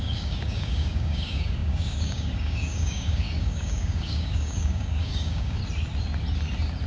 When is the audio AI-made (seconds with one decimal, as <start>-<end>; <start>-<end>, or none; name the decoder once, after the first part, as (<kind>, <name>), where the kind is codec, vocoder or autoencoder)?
0.0-5.6 (codec, DAC)